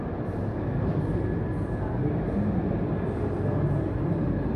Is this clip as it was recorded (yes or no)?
yes